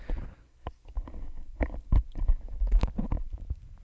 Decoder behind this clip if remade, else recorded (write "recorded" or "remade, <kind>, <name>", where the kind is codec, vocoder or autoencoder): remade, vocoder, BigVGAN v2